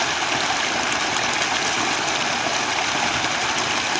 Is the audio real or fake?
real